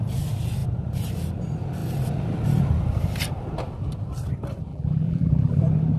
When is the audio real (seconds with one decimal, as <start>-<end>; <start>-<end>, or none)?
0.0-4.7; 5.6-6.0